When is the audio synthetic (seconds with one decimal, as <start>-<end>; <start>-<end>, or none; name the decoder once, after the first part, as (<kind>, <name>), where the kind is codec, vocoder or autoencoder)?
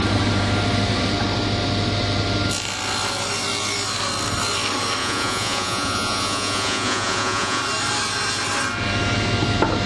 5.0-7.6 (vocoder, Vocos)